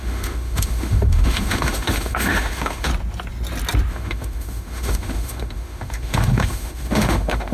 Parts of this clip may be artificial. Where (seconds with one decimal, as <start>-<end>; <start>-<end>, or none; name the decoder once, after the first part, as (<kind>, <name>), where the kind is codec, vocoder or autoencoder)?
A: 0.0-2.9 (autoencoder, DAC-VAE); 3.9-7.5